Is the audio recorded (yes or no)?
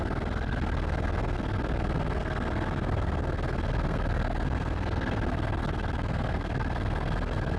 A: no